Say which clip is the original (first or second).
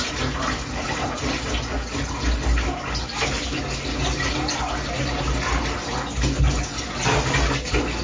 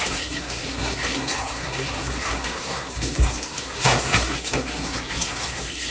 first